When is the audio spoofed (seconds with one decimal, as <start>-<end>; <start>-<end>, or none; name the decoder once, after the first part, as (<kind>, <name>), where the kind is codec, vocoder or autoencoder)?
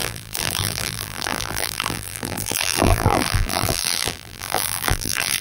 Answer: 0.0-5.4 (vocoder, BigVGAN v2)